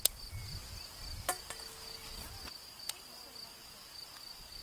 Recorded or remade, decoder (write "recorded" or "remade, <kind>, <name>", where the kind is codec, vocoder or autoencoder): recorded